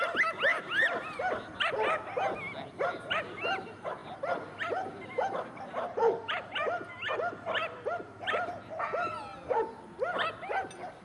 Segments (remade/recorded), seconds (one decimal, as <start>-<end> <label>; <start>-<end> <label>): 0.0-0.5 recorded; 0.5-1.2 remade; 1.2-4.0 recorded; 4.0-8.5 remade; 8.5-11.0 recorded